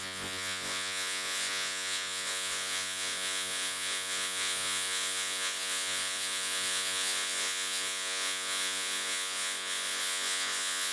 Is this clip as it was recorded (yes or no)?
no